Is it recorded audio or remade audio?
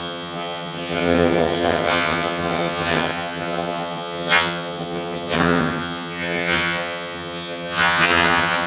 remade